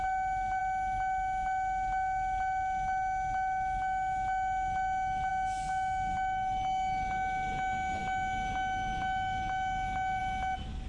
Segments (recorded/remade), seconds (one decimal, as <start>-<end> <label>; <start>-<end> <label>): 0.0-10.9 recorded

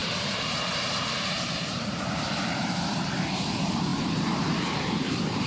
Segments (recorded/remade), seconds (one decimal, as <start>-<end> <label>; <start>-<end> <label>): 0.0-5.5 remade